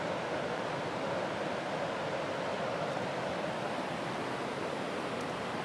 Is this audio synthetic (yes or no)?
no